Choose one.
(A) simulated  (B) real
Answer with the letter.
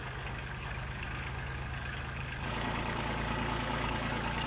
A